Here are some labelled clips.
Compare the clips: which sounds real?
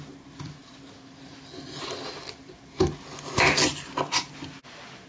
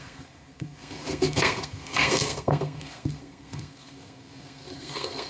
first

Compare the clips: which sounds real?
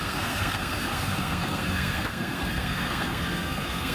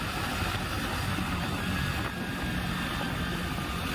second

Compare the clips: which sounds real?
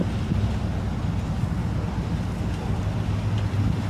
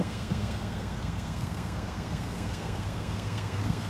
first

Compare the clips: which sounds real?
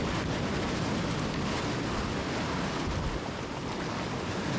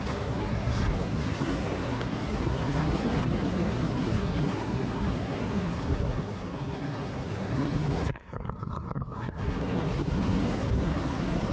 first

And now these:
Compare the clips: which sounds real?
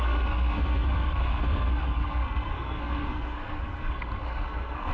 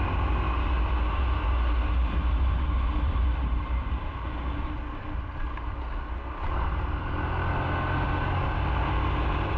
second